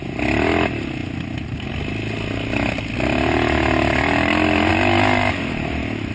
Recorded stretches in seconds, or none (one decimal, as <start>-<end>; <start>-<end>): 0.0-6.1